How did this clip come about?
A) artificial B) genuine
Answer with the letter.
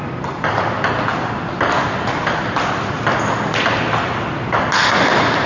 B